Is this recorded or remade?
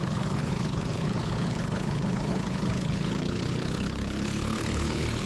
remade